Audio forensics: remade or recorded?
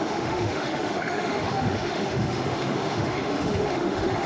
remade